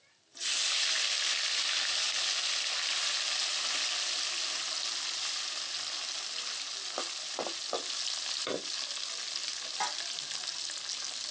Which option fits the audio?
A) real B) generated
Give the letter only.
A